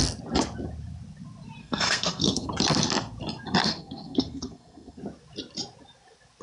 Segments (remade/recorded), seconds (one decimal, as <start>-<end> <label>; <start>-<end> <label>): 0.0-1.6 recorded; 1.6-2.5 remade; 2.5-3.6 recorded; 3.6-5.0 remade; 5.0-6.4 recorded